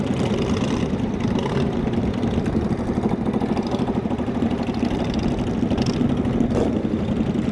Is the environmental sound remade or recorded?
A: recorded